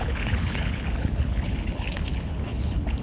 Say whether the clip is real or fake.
fake